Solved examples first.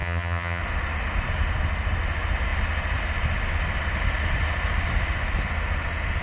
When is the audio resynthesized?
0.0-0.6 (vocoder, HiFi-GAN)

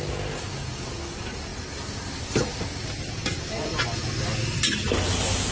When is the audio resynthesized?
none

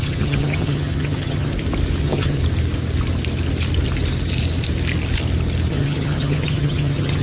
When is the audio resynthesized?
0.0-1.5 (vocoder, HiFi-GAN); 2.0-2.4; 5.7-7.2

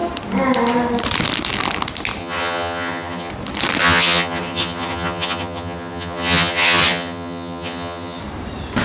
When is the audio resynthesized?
2.2-3.3 (vocoder, HiFi-GAN); 3.8-8.2

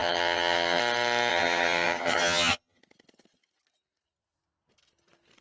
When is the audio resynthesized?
0.0-0.8 (vocoder, HiFi-GAN); 1.3-2.8

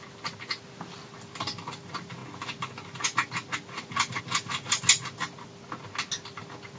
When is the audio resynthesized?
none

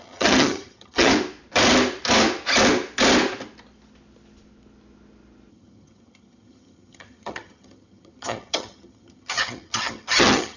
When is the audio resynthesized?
0.0-1.1 (vocoder, HiFi-GAN); 5.5-10.6

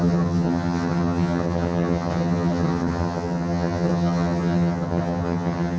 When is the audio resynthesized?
0.0-5.8 (vocoder, HiFi-GAN)